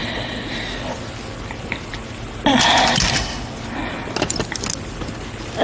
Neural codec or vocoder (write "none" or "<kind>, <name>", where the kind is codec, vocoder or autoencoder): none